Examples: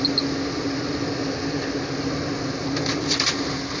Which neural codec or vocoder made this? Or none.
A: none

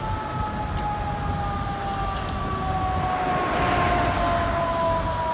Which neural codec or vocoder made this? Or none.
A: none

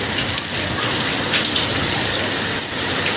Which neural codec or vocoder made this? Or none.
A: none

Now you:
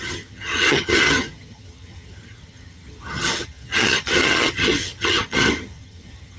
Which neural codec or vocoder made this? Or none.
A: vocoder, HiFi-GAN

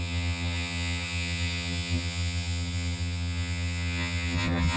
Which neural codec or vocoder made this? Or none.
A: vocoder, HiFi-GAN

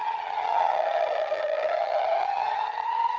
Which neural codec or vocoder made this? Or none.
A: vocoder, HiFi-GAN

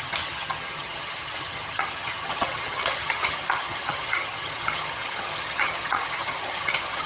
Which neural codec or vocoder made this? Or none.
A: vocoder, HiFi-GAN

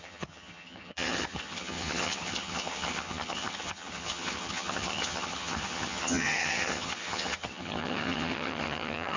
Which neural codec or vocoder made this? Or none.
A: vocoder, HiFi-GAN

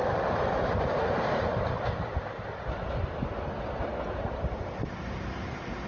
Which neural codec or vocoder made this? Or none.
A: none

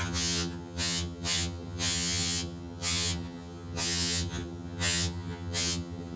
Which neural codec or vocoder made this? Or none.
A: vocoder, HiFi-GAN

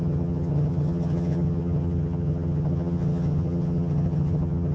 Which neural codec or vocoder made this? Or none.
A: vocoder, HiFi-GAN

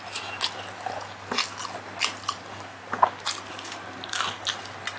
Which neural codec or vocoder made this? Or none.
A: none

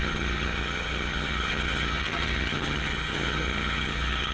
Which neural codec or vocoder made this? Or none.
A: vocoder, HiFi-GAN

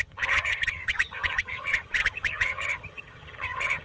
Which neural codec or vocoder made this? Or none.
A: vocoder, HiFi-GAN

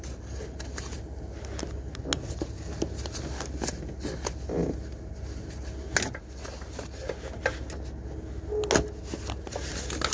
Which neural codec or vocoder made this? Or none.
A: none